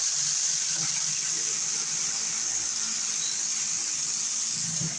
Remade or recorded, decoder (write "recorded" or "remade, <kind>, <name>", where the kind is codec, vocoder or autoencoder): recorded